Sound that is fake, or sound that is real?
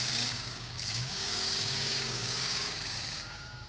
fake